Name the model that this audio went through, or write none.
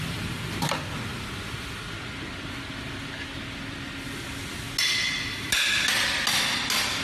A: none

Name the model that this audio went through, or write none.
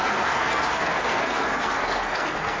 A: codec, SNAC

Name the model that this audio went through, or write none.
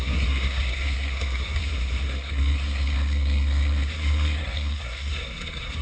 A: codec, SNAC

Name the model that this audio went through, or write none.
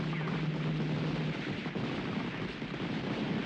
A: none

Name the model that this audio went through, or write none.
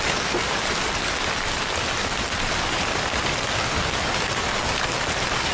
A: none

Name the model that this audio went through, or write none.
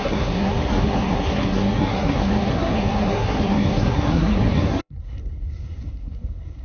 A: codec, SNAC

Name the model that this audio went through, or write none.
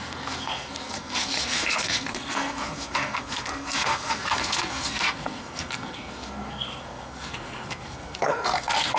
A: codec, SNAC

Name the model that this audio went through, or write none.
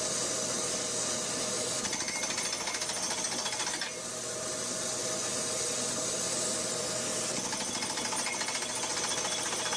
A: none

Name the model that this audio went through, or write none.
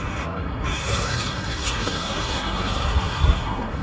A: codec, SNAC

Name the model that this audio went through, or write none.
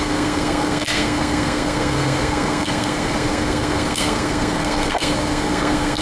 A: codec, SNAC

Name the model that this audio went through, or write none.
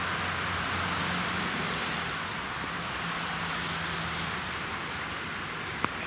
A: none